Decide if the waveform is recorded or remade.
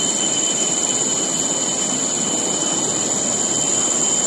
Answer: recorded